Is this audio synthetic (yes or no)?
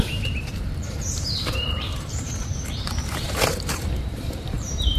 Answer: yes